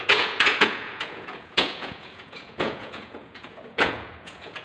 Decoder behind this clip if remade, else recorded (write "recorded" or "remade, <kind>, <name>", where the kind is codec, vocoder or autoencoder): remade, vocoder, Vocos